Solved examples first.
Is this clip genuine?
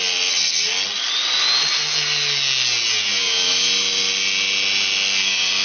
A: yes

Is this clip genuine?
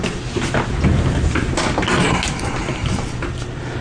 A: yes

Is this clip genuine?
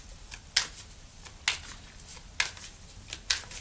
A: yes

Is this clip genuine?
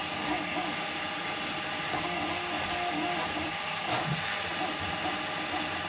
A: yes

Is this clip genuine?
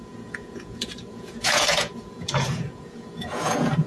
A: no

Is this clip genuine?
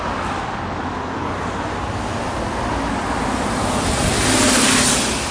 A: yes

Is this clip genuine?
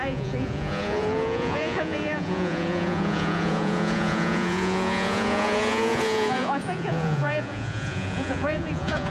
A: no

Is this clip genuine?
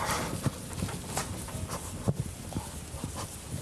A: yes